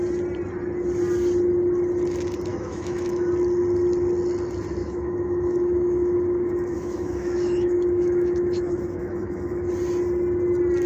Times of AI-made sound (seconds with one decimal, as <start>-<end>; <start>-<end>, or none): 2.5-3.3; 4.8-9.7